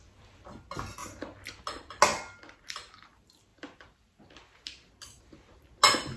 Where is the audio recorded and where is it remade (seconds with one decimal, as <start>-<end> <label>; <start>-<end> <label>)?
0.0-6.2 recorded